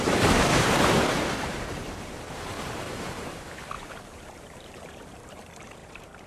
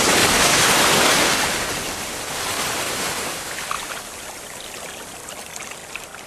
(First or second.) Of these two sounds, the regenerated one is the first